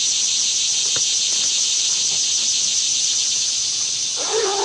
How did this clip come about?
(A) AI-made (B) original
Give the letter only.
B